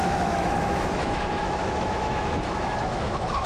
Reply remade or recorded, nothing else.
remade